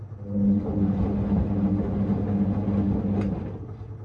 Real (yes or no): yes